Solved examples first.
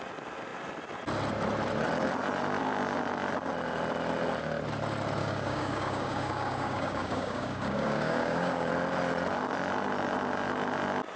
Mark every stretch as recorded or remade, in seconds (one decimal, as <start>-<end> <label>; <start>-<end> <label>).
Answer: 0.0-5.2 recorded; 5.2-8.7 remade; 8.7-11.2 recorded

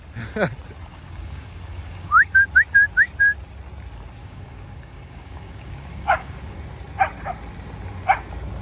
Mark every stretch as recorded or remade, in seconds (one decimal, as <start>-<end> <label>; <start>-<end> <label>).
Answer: 0.0-0.9 recorded; 0.9-2.3 remade; 2.3-4.2 recorded; 4.2-6.6 remade; 6.6-8.6 recorded

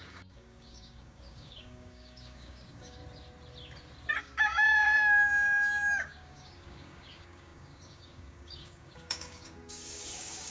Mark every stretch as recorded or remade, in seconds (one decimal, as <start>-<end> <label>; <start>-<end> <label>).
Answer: 0.0-3.0 remade; 3.0-4.2 recorded; 4.2-10.5 remade